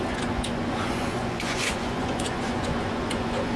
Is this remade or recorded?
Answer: remade